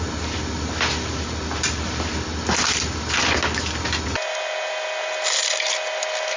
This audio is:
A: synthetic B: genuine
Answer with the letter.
B